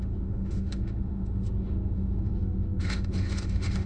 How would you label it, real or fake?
fake